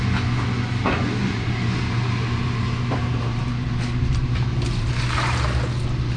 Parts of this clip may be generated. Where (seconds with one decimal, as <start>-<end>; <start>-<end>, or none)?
1.2-4.9